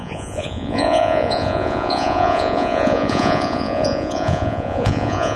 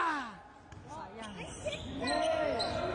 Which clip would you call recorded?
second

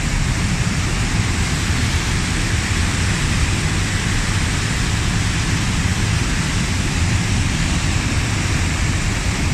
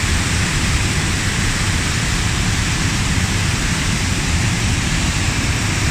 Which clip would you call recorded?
first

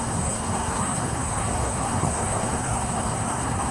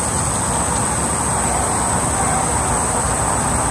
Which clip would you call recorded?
second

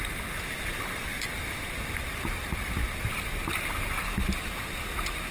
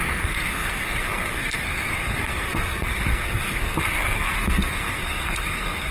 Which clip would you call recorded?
first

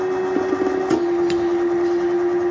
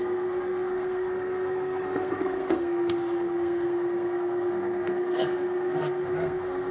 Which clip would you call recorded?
first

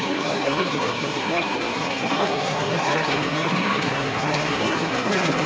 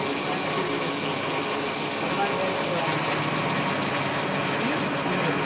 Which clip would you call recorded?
second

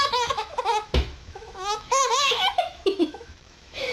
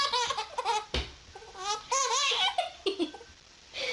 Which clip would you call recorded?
second